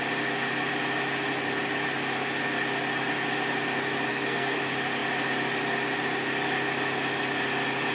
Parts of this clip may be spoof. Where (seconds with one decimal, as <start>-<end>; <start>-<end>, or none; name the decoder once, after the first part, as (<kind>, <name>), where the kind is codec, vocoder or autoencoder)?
4.1-4.6 (codec, SNAC)